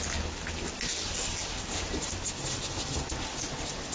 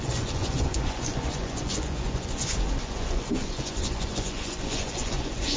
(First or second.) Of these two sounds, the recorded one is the first